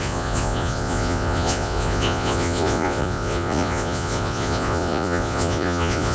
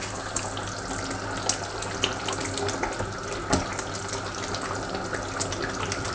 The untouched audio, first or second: second